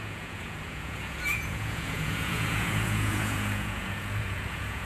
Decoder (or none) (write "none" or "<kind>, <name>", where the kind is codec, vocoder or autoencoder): vocoder, Vocos